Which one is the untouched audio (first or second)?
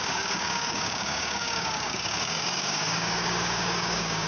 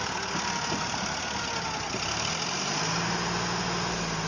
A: second